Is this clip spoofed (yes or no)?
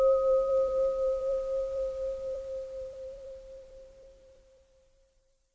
yes